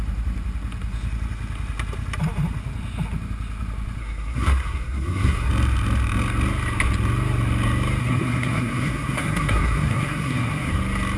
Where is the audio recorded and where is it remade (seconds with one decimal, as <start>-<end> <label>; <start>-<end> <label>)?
0.0-4.0 recorded; 4.0-5.5 remade; 5.5-8.0 recorded; 8.0-10.7 remade; 10.7-11.2 recorded